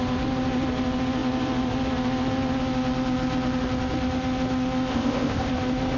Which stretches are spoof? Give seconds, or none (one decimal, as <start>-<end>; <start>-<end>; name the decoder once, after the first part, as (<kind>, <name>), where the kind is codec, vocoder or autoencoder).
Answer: 4.9-5.5 (codec, ZipCodec)